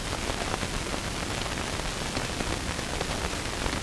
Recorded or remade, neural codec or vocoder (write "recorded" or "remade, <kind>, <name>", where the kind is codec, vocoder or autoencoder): recorded